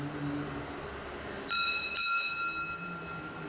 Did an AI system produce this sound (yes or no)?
no